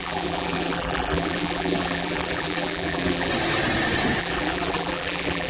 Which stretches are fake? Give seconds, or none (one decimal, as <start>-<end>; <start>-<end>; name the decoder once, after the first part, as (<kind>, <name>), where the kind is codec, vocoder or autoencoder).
0.0-3.3 (vocoder, BigVGAN v2); 4.2-5.5